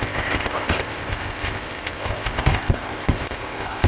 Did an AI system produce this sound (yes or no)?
yes